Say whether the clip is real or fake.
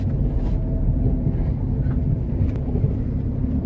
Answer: real